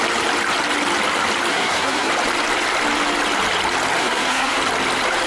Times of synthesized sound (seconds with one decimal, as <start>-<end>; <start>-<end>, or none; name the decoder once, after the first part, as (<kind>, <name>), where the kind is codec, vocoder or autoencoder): 1.5-2.1 (codec, SNAC); 4.0-4.6